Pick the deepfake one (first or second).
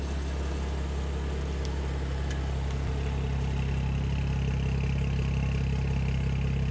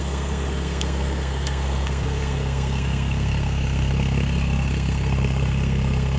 second